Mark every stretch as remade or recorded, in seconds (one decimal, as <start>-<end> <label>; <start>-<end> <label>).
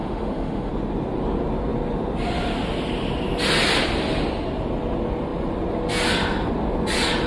0.0-0.7 remade; 0.7-7.3 recorded